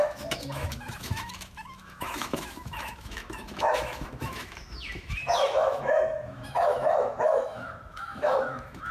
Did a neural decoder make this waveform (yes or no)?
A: yes